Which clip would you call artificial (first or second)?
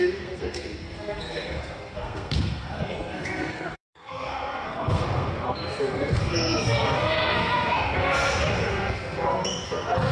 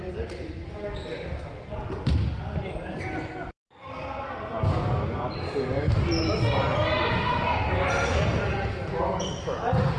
first